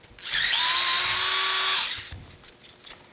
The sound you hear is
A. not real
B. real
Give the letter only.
B